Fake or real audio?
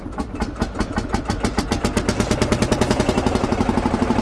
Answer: real